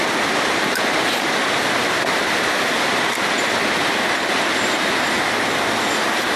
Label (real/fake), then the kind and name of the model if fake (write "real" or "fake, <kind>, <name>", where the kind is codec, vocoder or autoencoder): real